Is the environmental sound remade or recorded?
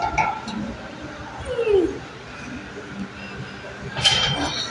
recorded